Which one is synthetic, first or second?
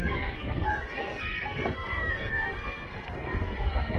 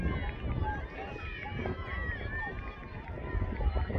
first